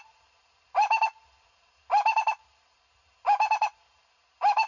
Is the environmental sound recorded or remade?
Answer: recorded